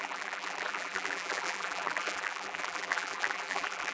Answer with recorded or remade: remade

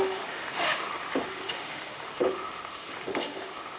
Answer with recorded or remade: remade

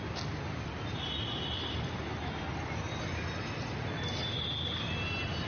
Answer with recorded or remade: recorded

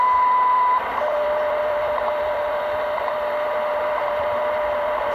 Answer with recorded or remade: remade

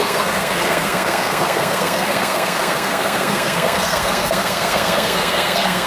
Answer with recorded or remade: remade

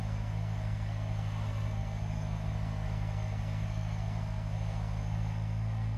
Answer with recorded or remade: remade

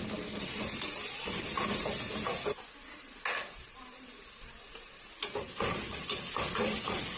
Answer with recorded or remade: recorded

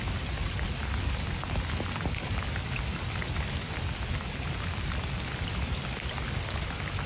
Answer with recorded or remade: recorded